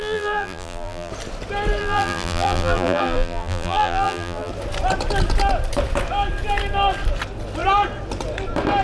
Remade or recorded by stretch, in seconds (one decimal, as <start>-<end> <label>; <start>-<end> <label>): 0.0-1.1 remade; 1.1-1.8 recorded; 1.8-4.5 remade; 4.5-8.8 recorded